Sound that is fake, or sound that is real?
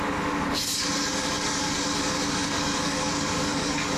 fake